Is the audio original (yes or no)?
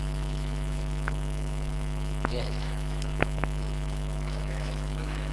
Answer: no